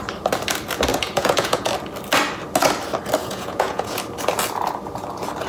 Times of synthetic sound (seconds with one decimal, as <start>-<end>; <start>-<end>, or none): 0.9-1.7; 3.2-4.0